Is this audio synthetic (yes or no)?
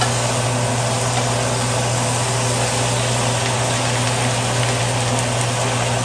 no